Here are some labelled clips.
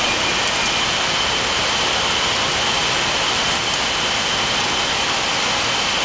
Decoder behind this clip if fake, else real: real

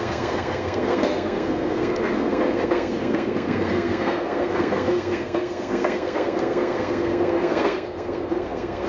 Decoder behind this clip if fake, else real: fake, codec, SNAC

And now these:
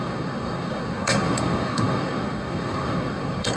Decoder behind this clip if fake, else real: fake, codec, SNAC